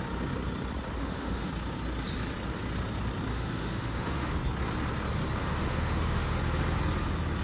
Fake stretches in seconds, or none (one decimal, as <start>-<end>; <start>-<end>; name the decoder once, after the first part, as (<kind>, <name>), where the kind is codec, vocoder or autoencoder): 1.0-1.5 (autoencoder, DAC-VAE); 3.3-4.3; 5.4-6.4